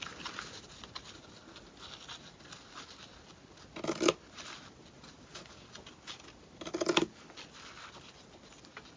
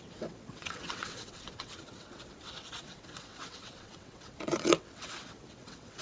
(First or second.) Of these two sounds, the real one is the first